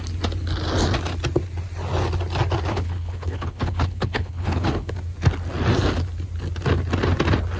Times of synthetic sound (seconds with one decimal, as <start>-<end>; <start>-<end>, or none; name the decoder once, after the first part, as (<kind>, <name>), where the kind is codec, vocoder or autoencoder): 2.7-4.9 (codec, HILCodec)